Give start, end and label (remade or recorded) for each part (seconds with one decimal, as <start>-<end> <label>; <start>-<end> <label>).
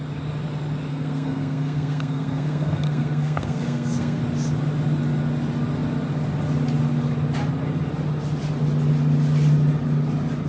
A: 0.0-0.9 recorded; 0.9-4.2 remade; 4.2-10.5 recorded